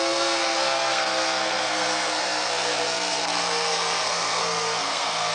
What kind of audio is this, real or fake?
fake